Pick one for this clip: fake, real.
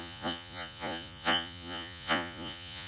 fake